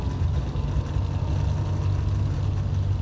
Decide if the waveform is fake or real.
real